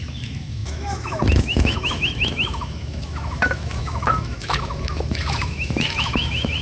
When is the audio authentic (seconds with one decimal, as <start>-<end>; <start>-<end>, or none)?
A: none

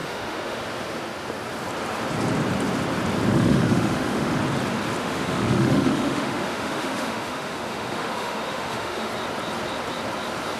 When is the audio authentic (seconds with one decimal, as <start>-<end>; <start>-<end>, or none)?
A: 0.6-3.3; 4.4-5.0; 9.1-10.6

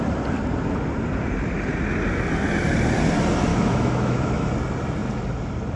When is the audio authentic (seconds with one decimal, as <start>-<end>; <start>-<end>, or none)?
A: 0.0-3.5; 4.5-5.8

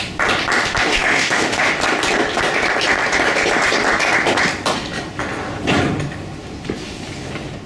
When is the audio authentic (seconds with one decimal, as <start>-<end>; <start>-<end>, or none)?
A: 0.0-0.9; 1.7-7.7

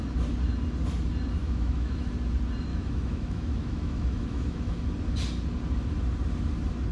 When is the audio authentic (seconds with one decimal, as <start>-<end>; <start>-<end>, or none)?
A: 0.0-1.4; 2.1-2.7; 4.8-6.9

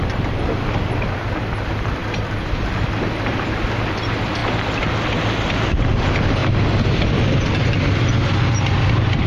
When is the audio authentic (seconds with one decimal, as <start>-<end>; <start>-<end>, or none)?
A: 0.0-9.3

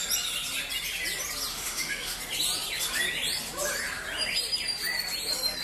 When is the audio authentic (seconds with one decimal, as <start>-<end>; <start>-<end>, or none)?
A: 0.0-1.5; 2.2-5.6

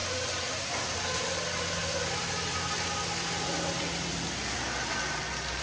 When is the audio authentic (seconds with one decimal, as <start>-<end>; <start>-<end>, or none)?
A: 0.0-5.6